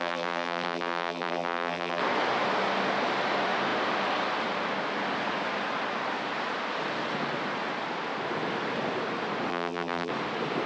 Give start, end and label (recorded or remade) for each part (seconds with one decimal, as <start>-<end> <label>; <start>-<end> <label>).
0.0-2.0 remade; 2.0-9.5 recorded; 9.5-10.1 remade; 10.1-10.7 recorded